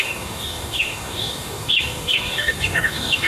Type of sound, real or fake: fake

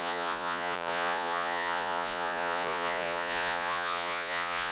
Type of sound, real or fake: fake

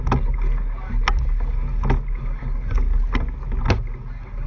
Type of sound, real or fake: real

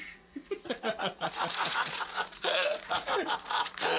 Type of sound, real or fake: fake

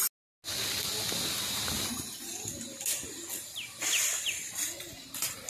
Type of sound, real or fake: real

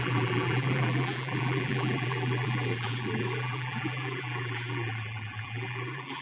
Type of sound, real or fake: fake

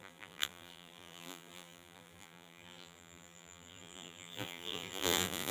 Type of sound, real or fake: fake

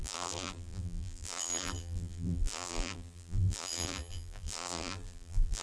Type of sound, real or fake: fake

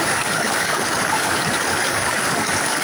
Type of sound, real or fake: fake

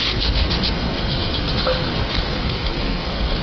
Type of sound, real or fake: fake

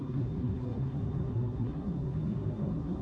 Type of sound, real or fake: fake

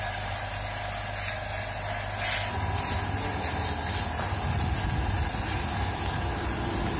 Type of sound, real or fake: real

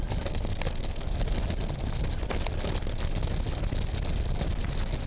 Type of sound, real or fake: real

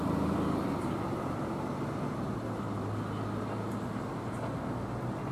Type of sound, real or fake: real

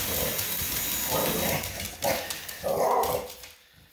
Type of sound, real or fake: real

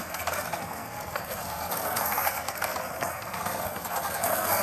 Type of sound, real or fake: fake